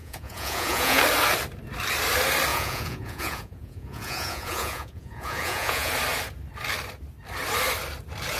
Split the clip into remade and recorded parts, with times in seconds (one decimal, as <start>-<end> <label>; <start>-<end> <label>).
0.0-1.0 remade; 1.0-2.5 recorded; 2.5-5.9 remade; 5.9-8.4 recorded